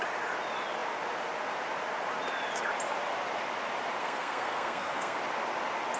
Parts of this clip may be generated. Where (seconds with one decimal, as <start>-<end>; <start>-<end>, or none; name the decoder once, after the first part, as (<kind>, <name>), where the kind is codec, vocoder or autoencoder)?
4.0-5.2 (codec, SNAC)

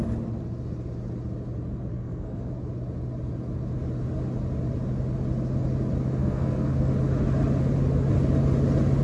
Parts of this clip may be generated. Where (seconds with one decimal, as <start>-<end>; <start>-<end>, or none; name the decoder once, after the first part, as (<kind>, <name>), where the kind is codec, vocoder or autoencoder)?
1.9-2.5 (codec, SNAC); 6.2-6.9

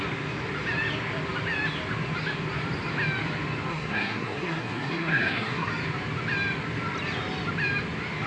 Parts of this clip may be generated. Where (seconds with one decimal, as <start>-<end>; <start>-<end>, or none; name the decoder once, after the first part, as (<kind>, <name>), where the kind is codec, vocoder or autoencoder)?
3.7-5.7 (codec, SNAC)

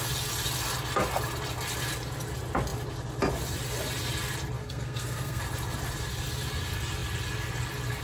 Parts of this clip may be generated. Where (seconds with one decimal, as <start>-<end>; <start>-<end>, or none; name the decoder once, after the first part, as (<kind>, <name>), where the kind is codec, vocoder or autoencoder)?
4.6-5.4 (codec, SNAC)

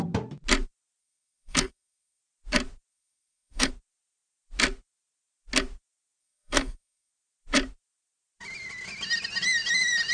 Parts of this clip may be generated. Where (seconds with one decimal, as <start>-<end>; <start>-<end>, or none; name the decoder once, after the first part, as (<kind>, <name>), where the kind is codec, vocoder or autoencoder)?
1.0-2.2 (codec, SNAC); 2.9-3.7; 6.2-7.1

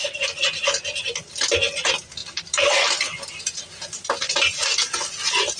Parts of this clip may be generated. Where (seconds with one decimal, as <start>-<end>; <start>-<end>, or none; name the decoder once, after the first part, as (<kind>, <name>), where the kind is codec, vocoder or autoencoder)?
none

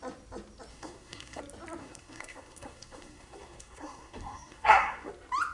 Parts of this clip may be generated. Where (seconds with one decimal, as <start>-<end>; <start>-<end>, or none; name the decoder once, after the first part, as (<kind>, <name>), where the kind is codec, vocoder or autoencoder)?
0.7-1.4 (codec, SNAC); 1.8-5.1